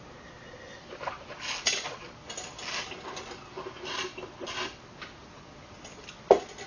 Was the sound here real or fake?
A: real